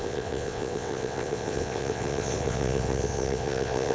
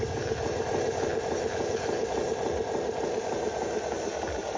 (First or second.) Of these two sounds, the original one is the second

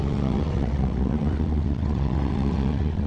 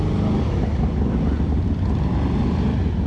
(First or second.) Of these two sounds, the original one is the second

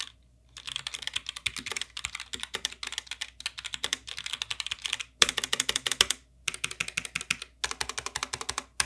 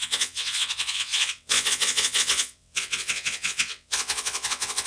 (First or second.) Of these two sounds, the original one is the first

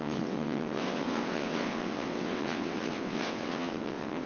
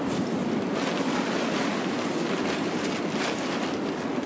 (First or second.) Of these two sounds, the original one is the second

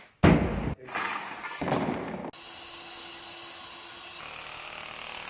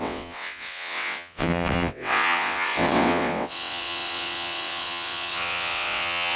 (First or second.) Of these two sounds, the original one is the first